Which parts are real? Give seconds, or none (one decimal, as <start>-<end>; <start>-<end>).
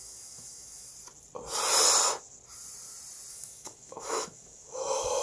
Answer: 0.9-3.3